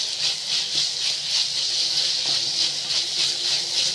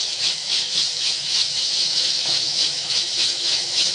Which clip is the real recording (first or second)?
first